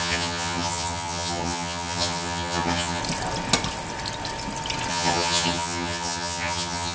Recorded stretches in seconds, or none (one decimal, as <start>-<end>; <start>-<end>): 3.0-4.9